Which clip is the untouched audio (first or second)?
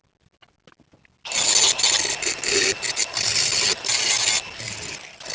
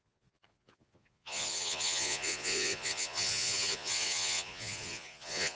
first